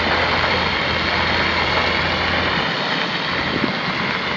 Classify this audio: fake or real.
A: real